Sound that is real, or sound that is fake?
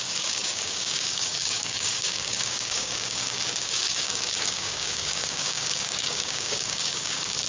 fake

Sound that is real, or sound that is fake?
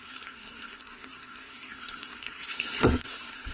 fake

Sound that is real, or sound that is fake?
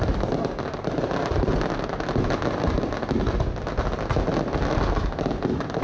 real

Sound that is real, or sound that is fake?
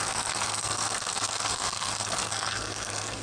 fake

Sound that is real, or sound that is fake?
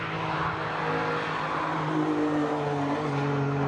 real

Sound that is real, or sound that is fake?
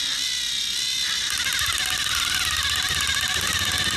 real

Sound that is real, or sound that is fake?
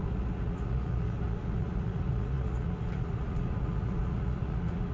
fake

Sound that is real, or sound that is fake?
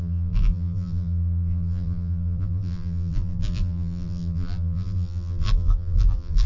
fake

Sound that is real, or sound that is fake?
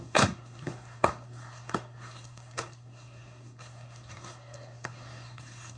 fake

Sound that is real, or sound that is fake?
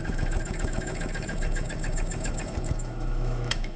fake